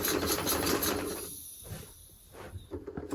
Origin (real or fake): fake